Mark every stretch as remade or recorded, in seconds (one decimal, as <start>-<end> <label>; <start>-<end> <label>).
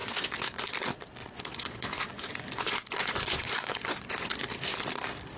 0.0-0.6 remade; 0.6-1.2 recorded; 1.2-4.4 remade; 4.4-5.4 recorded